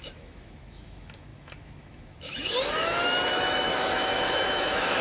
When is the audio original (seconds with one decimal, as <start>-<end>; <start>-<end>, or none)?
none